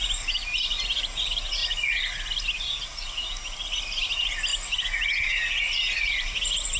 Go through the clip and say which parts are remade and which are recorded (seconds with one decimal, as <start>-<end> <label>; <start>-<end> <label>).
0.0-6.8 recorded